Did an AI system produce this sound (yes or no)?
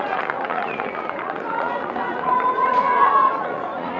yes